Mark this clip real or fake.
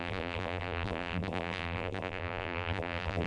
fake